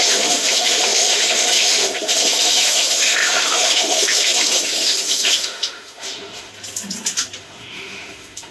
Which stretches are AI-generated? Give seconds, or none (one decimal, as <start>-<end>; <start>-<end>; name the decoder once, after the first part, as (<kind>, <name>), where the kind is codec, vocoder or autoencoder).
0.0-6.5 (autoencoder, DAC-VAE); 7.4-8.5